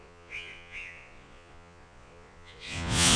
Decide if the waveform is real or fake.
fake